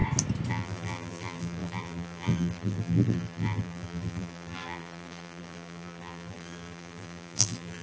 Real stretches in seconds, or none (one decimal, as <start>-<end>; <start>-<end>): 0.0-0.5